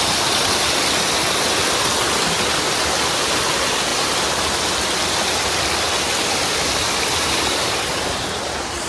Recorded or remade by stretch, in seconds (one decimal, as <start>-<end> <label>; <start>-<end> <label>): 0.0-8.9 recorded